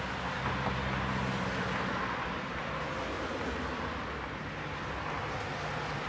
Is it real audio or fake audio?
real